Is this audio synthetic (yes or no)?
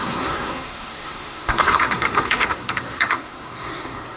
yes